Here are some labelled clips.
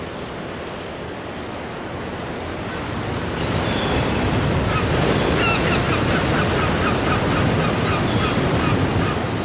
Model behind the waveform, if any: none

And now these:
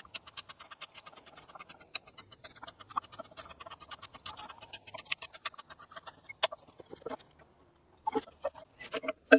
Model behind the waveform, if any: none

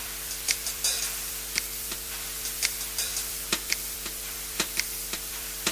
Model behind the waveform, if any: vocoder, BigVGAN v2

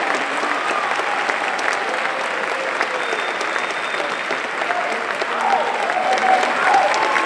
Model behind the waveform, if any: none